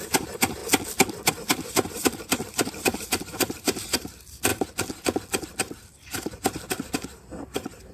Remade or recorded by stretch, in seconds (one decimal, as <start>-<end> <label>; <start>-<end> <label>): 0.0-0.6 remade; 0.6-1.3 recorded; 1.3-4.5 remade; 4.5-5.9 recorded; 5.9-7.9 remade